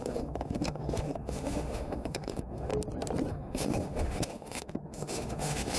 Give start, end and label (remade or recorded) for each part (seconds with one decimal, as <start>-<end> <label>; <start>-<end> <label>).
0.0-2.7 remade; 2.7-3.3 recorded; 3.3-5.8 remade